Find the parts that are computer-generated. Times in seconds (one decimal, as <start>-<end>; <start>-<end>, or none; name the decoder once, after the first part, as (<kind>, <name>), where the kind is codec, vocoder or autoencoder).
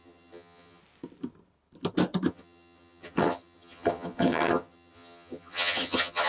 0.0-0.8 (vocoder, HiFi-GAN); 2.3-6.3